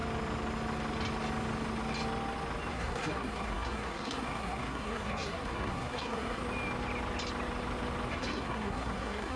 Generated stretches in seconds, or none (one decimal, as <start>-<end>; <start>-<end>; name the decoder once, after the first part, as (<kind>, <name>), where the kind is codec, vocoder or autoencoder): 2.7-6.4 (codec, SNAC); 8.1-9.4